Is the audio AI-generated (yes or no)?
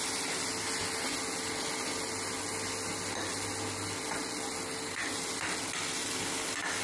no